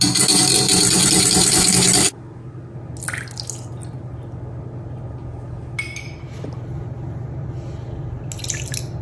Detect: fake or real real